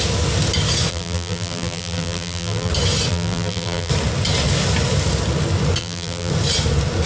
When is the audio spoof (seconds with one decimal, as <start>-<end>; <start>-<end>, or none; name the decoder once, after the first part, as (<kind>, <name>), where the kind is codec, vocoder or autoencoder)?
0.9-2.7 (vocoder, BigVGAN v2); 3.1-3.9; 5.8-6.3